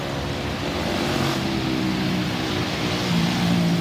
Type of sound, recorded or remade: recorded